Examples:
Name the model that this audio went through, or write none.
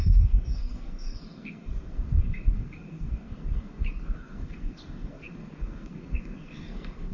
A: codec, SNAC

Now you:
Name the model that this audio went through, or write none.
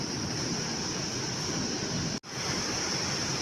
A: none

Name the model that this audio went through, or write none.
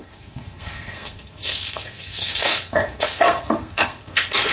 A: codec, SNAC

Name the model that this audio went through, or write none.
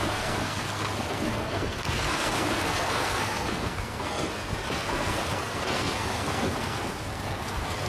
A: codec, SNAC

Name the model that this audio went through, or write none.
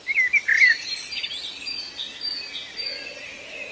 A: none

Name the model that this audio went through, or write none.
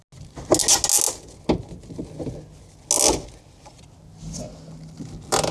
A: none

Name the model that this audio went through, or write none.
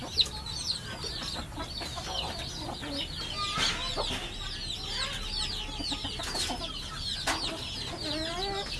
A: none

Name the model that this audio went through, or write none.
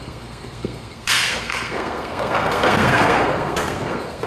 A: codec, SNAC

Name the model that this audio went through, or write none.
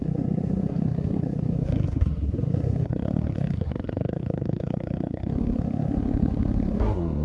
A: codec, SNAC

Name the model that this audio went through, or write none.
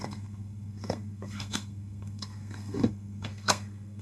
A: codec, SNAC